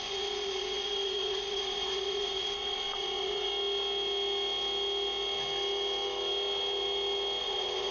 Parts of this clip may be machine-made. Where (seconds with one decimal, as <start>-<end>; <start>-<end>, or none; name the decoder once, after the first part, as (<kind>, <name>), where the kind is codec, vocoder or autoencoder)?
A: 0.0-3.5 (vocoder, Vocos); 7.4-7.9